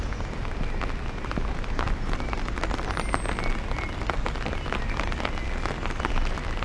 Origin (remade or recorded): recorded